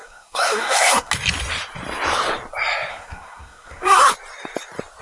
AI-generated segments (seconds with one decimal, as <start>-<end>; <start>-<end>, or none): 0.0-1.1; 2.9-4.1